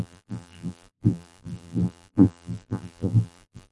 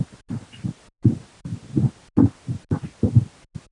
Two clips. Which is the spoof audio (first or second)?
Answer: first